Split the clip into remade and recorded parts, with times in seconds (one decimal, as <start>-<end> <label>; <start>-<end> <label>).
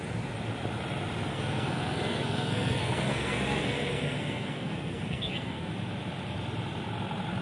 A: 0.0-1.3 recorded; 1.3-5.7 remade; 5.7-7.4 recorded